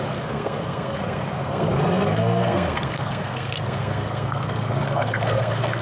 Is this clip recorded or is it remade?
remade